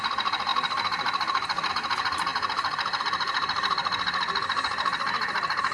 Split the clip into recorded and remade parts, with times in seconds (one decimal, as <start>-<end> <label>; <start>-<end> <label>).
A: 0.0-2.3 recorded; 2.3-3.0 remade; 3.0-5.7 recorded